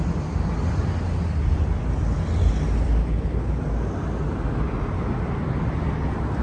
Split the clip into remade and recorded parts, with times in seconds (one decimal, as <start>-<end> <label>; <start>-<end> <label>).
0.0-3.0 recorded; 3.0-3.6 remade; 3.6-6.4 recorded